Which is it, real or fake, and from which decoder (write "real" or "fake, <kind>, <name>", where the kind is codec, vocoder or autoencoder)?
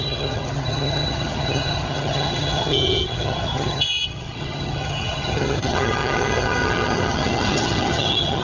fake, vocoder, HiFi-GAN